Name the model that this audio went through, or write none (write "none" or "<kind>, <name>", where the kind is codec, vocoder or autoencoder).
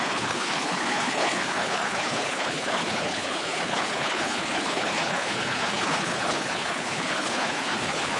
codec, HILCodec